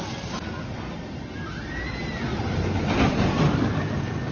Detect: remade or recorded recorded